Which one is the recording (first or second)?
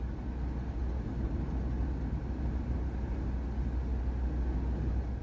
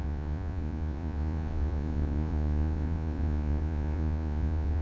first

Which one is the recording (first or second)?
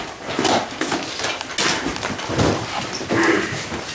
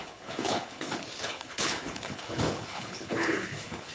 first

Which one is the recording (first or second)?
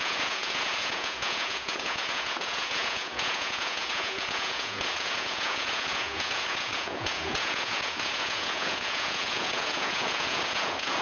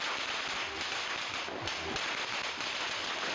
second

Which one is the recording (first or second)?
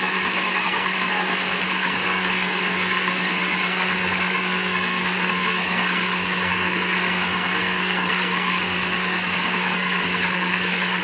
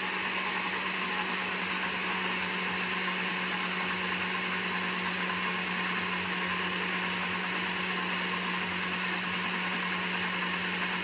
second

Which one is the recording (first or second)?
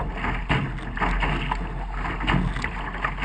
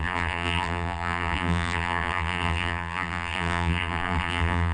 first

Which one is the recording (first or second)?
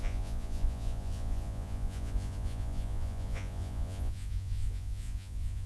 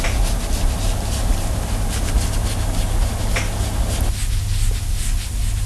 second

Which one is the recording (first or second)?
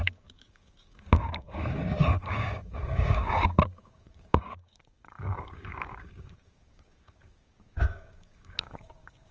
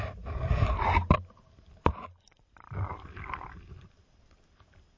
second